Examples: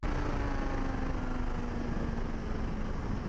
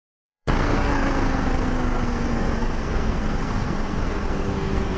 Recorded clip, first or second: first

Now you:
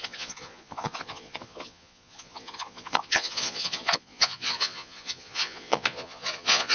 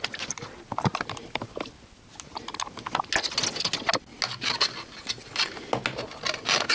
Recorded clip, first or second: second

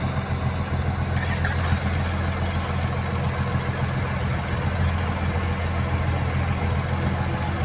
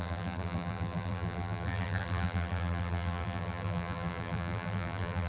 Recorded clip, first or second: first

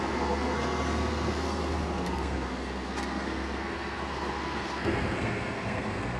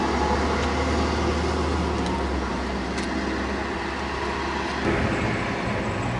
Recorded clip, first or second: second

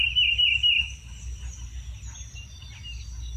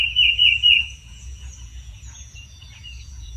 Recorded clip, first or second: first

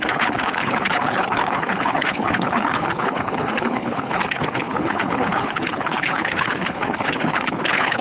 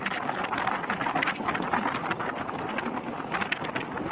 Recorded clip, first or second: second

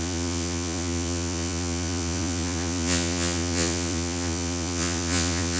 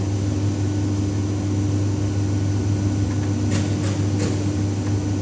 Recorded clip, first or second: second